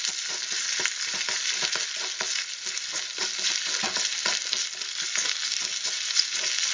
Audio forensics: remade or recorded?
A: recorded